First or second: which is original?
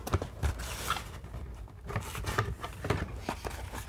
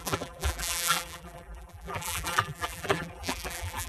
first